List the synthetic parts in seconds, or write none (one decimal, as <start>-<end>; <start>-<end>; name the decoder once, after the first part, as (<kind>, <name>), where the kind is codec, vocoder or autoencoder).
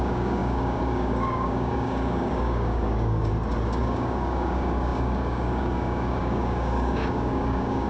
0.0-3.3 (codec, DAC); 3.8-7.9